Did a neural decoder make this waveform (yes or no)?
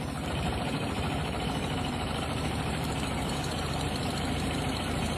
yes